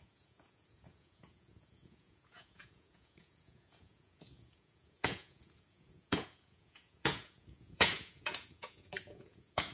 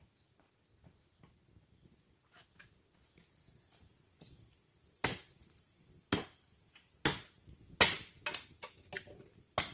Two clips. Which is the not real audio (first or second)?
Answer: first